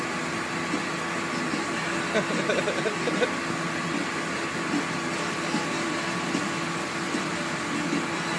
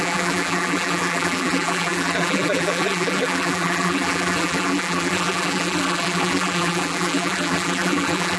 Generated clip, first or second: second